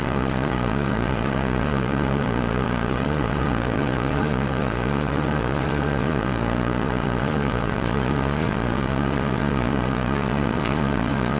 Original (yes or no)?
no